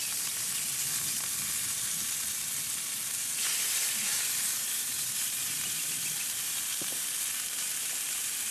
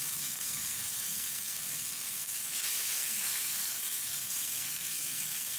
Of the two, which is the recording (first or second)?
first